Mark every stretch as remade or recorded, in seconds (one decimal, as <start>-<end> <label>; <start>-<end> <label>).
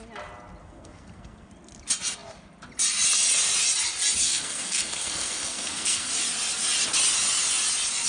0.0-0.6 recorded; 0.6-1.5 remade; 1.5-4.2 recorded; 4.2-6.1 remade; 6.1-8.1 recorded